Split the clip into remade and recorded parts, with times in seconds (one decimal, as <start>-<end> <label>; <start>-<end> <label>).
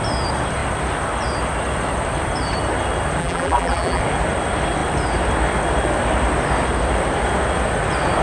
0.0-3.2 recorded; 3.2-4.0 remade; 4.0-8.2 recorded